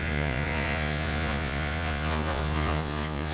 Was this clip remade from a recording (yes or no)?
yes